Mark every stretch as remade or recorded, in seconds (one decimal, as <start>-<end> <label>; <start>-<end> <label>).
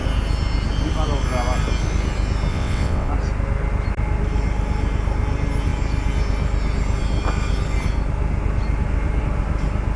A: 0.0-2.5 recorded; 2.5-3.1 remade; 3.1-10.0 recorded